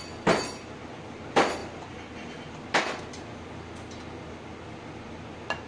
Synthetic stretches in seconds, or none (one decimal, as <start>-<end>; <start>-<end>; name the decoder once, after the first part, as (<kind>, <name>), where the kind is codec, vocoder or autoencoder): 1.6-2.1 (vocoder, BigVGAN v2)